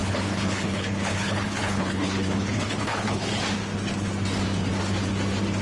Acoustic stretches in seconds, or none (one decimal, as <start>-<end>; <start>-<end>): 3.4-5.6